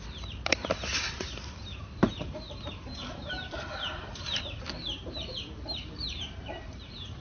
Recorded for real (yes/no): no